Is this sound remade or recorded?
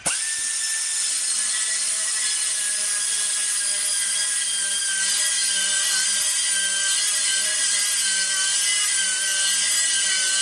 recorded